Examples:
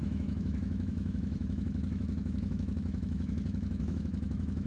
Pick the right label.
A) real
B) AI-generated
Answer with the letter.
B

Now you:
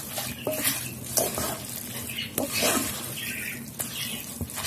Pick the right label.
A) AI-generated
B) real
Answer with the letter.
B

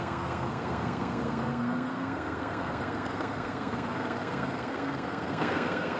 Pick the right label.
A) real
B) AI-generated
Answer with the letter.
B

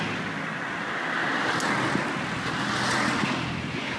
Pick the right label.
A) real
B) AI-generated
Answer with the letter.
A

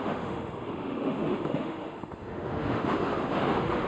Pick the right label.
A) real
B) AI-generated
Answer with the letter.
B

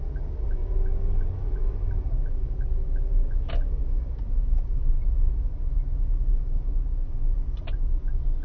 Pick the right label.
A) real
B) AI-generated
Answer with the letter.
A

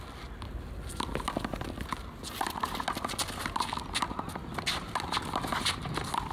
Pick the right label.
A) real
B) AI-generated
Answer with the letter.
A